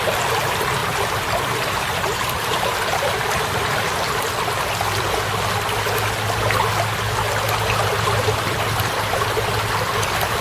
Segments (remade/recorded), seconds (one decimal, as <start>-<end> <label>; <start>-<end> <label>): 0.0-0.8 recorded; 0.8-2.8 remade; 2.8-10.4 recorded